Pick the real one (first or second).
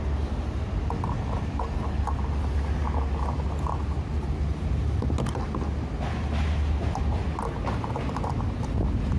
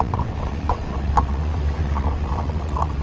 first